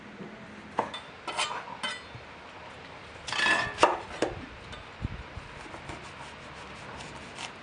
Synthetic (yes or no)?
no